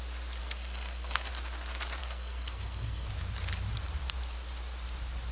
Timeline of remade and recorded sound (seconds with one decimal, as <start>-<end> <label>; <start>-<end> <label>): 0.0-0.4 recorded; 0.4-1.3 remade; 1.3-2.0 recorded; 2.0-3.1 remade; 3.1-5.3 recorded